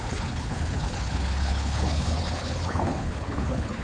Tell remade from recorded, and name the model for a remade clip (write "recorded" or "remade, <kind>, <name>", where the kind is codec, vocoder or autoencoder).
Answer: remade, codec, HILCodec